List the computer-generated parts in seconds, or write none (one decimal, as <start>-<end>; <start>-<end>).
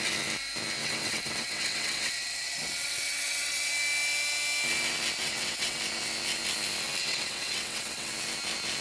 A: 0.8-3.7; 5.2-5.8; 7.0-8.1